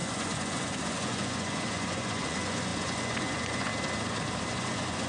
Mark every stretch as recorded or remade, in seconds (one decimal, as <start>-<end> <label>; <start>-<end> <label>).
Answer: 0.0-3.7 remade; 3.7-4.5 recorded; 4.5-5.1 remade

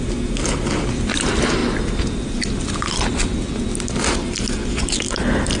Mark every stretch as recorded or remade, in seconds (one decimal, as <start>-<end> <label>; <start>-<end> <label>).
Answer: 0.0-5.6 recorded

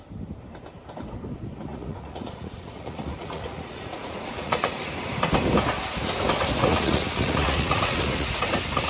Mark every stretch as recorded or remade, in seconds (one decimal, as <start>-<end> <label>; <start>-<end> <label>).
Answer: 0.0-1.7 recorded; 1.7-4.9 remade; 4.9-6.7 recorded; 6.7-8.4 remade; 8.4-8.9 recorded

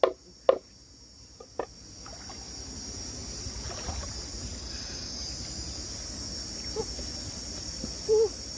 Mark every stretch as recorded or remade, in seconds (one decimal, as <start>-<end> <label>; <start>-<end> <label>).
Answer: 0.0-8.6 recorded

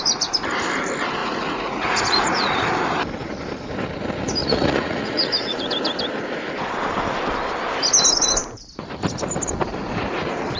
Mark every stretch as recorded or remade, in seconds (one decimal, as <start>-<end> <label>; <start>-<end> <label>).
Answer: 0.0-1.2 recorded; 1.2-2.6 remade; 2.6-4.4 recorded; 4.4-5.7 remade; 5.7-10.6 recorded

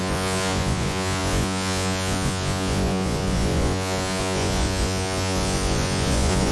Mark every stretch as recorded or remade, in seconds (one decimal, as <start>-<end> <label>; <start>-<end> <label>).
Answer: 0.0-6.5 remade

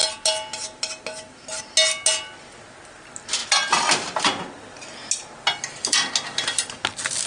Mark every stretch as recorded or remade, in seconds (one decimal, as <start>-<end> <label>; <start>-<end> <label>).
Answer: 0.0-7.3 recorded

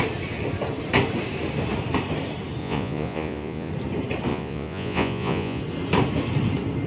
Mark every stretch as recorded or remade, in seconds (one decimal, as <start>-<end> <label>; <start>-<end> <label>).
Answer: 0.0-2.6 recorded; 2.6-3.7 remade; 3.7-4.3 recorded; 4.3-5.6 remade; 5.6-6.9 recorded